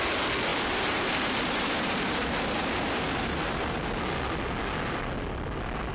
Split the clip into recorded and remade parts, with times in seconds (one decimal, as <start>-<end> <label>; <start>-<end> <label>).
0.0-0.5 recorded; 0.5-4.0 remade; 4.0-5.9 recorded